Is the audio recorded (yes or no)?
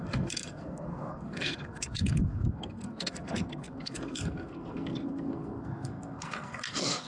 no